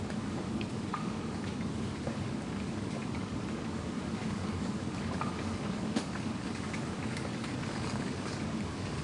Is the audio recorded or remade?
remade